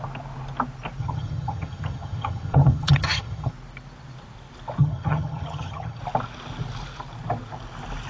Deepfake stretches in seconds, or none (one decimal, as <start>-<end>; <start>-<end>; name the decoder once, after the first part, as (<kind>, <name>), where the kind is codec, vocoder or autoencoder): 1.0-3.5 (vocoder, HiFi-GAN); 4.8-6.0